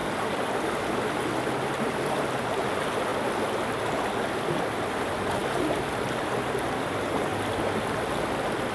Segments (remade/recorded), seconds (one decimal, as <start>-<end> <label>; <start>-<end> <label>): 0.0-8.7 recorded